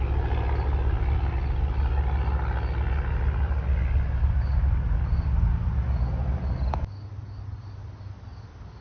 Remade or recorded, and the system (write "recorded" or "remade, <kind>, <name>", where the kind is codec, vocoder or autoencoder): recorded